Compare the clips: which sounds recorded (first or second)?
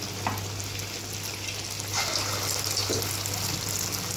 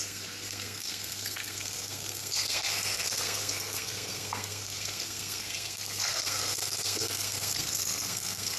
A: first